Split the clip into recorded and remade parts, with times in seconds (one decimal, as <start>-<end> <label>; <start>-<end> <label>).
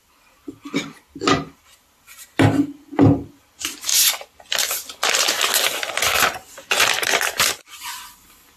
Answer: 0.0-8.6 recorded